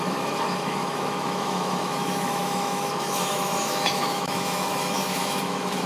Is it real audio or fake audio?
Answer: fake